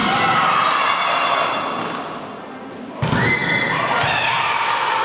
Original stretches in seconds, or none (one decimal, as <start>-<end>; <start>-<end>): 0.0-5.0